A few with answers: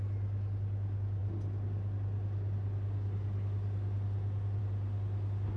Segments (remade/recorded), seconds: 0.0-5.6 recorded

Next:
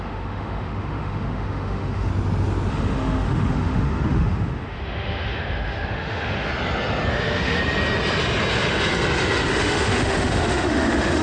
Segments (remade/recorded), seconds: 0.0-2.1 remade; 2.1-2.7 recorded; 2.7-6.5 remade; 6.5-7.1 recorded; 7.1-7.6 remade; 7.6-9.5 recorded; 9.5-11.2 remade